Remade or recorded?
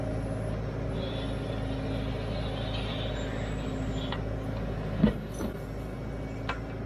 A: recorded